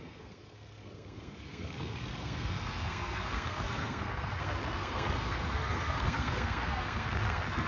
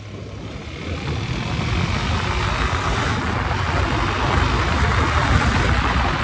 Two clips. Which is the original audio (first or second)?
second